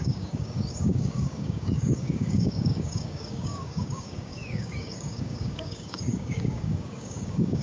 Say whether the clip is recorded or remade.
remade